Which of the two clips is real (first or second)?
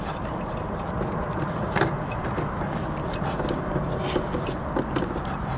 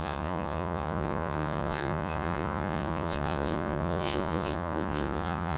first